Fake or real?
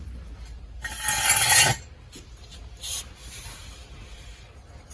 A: real